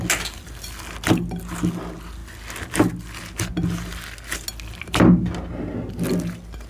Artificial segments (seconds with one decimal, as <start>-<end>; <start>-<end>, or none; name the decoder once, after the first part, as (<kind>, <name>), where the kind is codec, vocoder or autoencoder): none